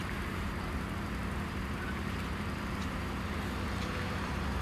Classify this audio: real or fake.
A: fake